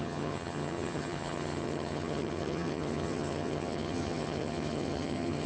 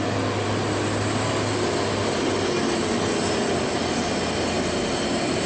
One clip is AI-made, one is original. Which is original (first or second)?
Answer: second